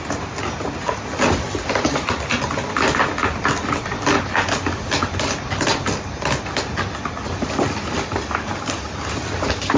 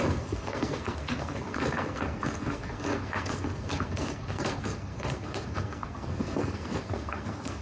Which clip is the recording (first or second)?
first